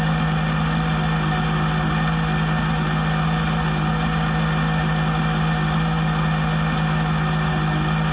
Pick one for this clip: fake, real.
real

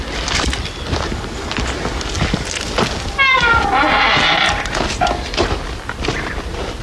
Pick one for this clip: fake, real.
real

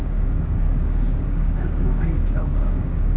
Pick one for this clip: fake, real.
fake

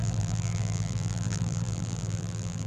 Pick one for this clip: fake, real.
fake